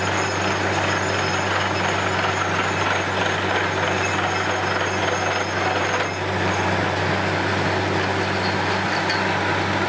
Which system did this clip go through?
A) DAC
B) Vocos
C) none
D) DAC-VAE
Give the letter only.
C